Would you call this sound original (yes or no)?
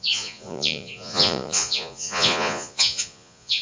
no